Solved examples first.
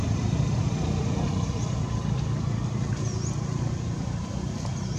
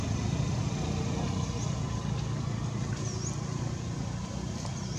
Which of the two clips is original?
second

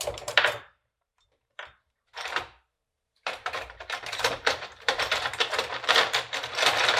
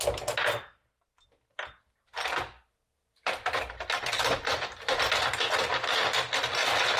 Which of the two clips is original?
second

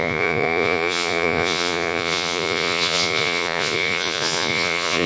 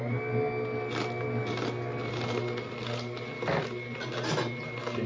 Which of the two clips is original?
second